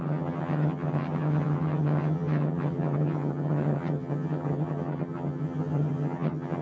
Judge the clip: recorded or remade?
remade